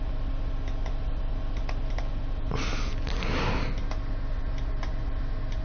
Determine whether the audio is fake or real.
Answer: real